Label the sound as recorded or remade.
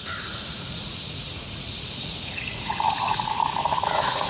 remade